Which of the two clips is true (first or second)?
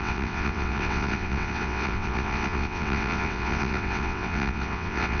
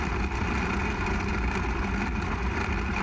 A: second